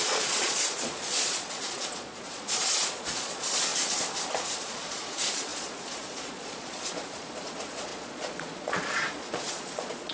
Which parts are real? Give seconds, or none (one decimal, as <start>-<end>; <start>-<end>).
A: 3.7-4.3